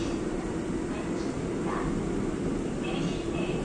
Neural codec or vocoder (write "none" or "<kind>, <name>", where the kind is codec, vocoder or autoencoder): none